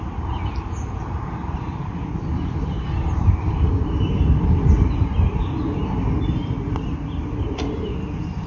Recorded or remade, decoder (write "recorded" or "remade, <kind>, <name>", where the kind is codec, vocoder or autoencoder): recorded